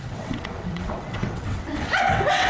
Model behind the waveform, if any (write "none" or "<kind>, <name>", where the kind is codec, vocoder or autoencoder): vocoder, WaveNeXt